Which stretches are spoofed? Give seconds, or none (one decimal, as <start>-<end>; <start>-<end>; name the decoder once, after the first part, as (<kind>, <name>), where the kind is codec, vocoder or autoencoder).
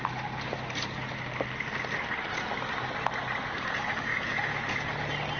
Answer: 4.1-4.9 (vocoder, Vocos)